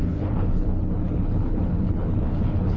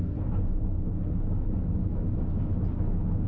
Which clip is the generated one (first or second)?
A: first